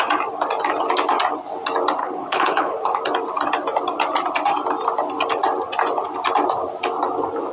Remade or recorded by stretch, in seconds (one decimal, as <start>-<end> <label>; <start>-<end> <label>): 0.0-2.0 recorded; 2.0-3.0 remade; 3.0-7.5 recorded